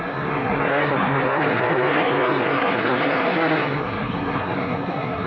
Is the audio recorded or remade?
remade